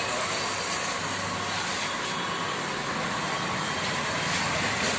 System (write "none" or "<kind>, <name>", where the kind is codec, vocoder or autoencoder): none